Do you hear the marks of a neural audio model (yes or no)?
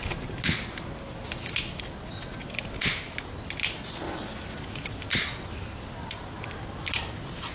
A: no